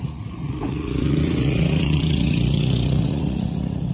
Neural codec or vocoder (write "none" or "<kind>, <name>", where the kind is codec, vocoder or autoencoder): vocoder, Vocos